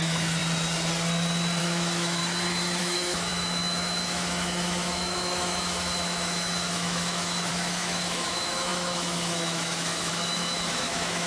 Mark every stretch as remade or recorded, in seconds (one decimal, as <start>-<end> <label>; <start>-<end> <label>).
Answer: 0.0-0.4 remade; 0.4-1.6 recorded; 1.6-2.2 remade; 2.2-2.8 recorded; 2.8-11.3 remade